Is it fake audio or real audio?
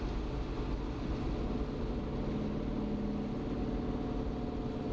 real